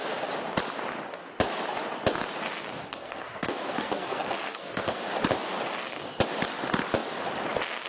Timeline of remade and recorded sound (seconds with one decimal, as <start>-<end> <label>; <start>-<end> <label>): 0.0-2.9 recorded; 2.9-5.0 remade; 5.0-7.9 recorded